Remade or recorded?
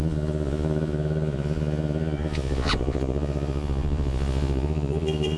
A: remade